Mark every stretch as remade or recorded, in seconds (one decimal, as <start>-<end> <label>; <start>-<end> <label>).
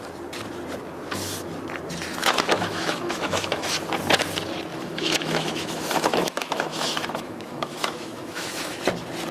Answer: 0.0-2.2 recorded; 2.2-3.7 remade; 3.7-4.7 recorded; 4.7-8.8 remade; 8.8-9.3 recorded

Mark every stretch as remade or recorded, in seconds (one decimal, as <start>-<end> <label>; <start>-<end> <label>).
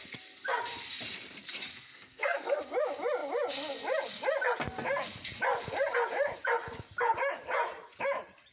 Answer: 0.0-1.7 recorded; 1.7-2.6 remade; 2.6-8.5 recorded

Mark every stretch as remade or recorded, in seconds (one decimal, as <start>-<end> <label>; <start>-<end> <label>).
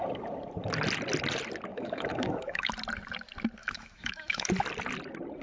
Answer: 0.0-1.7 recorded; 1.7-2.7 remade; 2.7-3.6 recorded; 3.6-4.5 remade; 4.5-5.4 recorded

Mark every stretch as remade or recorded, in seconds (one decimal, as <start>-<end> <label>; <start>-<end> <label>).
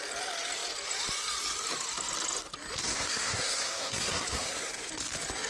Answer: 0.0-2.8 recorded; 2.8-4.9 remade; 4.9-5.5 recorded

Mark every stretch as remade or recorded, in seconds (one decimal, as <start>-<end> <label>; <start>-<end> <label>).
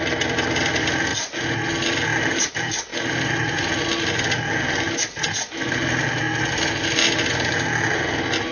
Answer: 0.0-8.5 recorded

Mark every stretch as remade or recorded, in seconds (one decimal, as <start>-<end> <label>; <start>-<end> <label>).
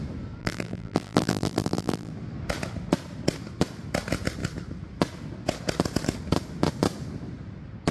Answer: 0.0-0.4 recorded; 0.4-2.1 remade; 2.1-7.9 recorded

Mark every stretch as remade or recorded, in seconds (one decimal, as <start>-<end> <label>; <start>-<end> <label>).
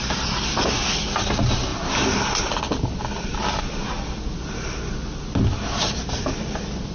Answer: 0.0-6.9 recorded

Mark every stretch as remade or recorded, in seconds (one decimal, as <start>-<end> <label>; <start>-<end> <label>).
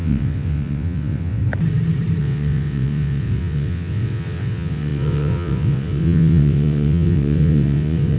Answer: 0.0-1.4 remade; 1.4-2.2 recorded; 2.2-8.2 remade